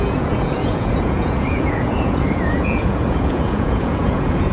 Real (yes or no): no